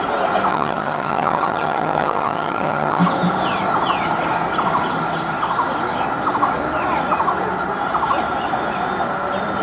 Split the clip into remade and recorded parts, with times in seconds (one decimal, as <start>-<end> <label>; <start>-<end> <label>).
0.0-0.5 recorded; 0.5-3.0 remade; 3.0-9.6 recorded